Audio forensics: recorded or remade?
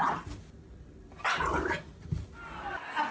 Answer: recorded